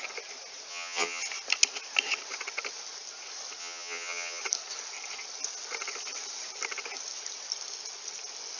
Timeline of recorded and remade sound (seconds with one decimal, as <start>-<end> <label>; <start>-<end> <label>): 0.0-0.7 recorded; 0.7-1.2 remade; 1.2-3.6 recorded; 3.6-4.4 remade; 4.4-8.6 recorded